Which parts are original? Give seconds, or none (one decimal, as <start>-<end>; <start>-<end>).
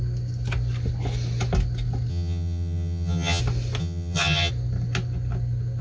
0.0-2.1; 3.4-3.8; 4.5-5.8